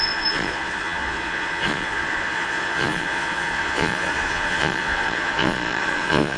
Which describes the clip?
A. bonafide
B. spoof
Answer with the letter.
B